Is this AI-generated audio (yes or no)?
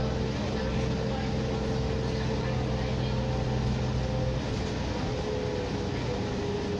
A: no